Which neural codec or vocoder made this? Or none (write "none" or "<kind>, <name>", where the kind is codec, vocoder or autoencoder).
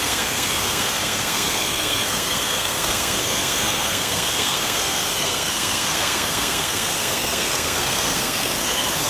codec, SNAC